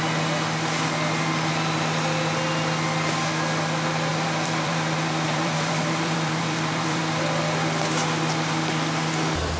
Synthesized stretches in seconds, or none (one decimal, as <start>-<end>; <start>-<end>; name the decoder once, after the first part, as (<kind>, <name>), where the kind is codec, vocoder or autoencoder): 4.1-7.0 (vocoder, BigVGAN v2)